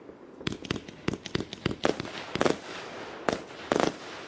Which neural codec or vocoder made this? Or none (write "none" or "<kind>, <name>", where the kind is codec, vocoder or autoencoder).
none